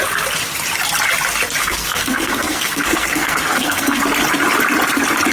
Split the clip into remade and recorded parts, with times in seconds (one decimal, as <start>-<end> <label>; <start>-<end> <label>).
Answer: 0.0-1.6 recorded; 1.6-4.0 remade; 4.0-5.3 recorded